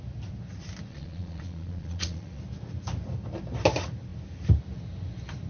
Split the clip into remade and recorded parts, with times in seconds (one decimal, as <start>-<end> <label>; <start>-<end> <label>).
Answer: 0.0-0.9 recorded; 0.9-2.4 remade; 2.4-5.5 recorded